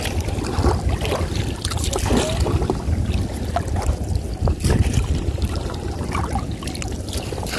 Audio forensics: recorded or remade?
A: recorded